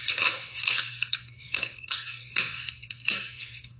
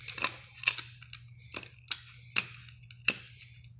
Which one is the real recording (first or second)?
second